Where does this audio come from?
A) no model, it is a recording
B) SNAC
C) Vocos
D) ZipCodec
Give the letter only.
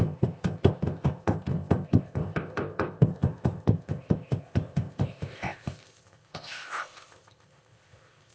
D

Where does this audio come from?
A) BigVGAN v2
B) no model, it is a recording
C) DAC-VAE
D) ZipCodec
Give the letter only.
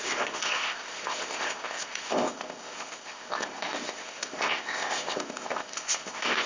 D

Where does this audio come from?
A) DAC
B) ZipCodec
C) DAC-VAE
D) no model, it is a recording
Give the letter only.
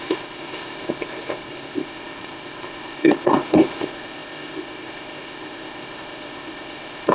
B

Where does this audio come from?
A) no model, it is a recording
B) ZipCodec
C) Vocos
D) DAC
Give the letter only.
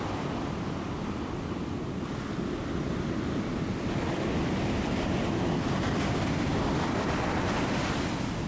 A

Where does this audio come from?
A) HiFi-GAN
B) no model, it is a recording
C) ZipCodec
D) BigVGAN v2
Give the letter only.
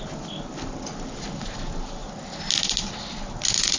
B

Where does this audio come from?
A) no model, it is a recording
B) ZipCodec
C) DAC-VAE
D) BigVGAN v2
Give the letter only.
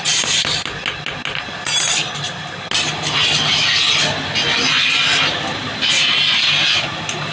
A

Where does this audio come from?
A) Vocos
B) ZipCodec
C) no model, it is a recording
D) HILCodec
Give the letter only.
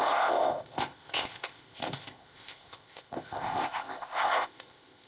B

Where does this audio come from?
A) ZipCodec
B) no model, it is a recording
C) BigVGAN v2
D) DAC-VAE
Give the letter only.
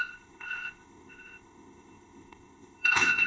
A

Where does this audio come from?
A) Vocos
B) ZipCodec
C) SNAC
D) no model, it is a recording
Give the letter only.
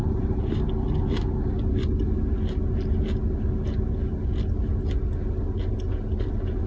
D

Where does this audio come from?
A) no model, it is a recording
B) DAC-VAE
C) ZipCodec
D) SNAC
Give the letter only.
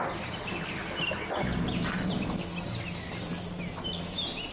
A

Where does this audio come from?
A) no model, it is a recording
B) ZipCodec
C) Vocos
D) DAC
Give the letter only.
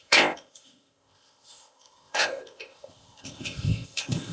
B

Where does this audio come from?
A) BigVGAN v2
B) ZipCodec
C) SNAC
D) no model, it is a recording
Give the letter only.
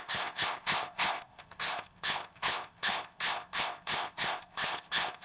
B